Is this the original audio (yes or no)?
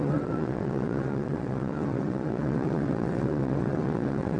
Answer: no